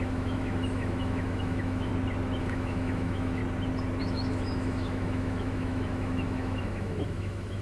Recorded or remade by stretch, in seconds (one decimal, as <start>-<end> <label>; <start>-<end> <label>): 0.0-1.9 remade; 1.9-2.4 recorded; 2.4-3.4 remade; 3.4-4.0 recorded; 4.0-7.6 remade